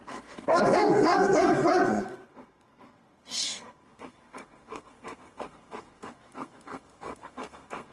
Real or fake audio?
fake